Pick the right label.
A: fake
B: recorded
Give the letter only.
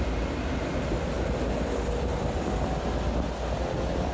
A